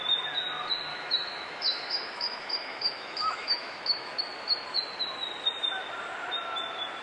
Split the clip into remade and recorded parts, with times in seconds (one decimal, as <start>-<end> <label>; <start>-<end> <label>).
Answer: 0.0-0.9 recorded; 0.9-4.2 remade; 4.2-7.0 recorded